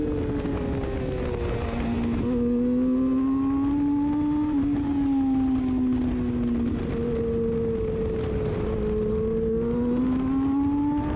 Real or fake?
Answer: real